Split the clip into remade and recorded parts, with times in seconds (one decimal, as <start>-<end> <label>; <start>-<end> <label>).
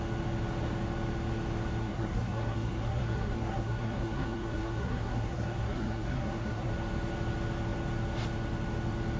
0.0-1.8 recorded; 1.8-6.7 remade; 6.7-9.2 recorded